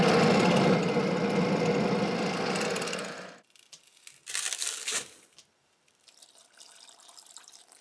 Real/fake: real